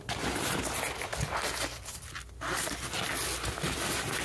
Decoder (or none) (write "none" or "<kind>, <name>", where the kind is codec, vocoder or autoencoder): none